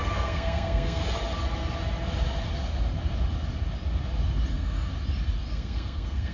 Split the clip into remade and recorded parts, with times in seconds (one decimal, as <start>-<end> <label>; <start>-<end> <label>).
0.0-1.0 remade; 1.0-4.5 recorded; 4.5-4.9 remade; 4.9-5.5 recorded; 5.5-6.3 remade